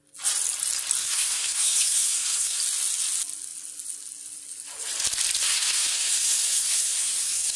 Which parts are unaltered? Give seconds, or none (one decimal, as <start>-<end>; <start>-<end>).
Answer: 0.0-1.0; 2.6-5.4